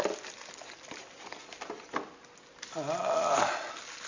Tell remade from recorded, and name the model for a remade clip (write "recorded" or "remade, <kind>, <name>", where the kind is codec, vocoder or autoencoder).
recorded